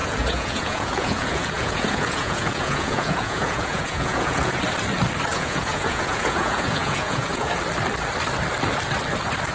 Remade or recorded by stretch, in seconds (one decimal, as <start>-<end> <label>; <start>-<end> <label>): 0.0-4.6 remade; 4.6-5.3 recorded; 5.3-7.5 remade; 7.5-9.5 recorded